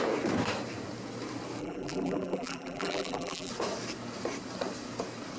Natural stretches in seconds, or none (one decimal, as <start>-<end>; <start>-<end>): 0.0-1.6; 3.5-5.4